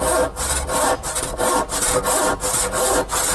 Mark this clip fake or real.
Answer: real